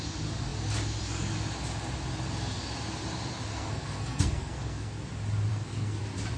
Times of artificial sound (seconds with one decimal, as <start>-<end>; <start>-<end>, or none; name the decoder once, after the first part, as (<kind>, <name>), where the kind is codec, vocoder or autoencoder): 3.5-5.0 (codec, SNAC); 5.5-6.0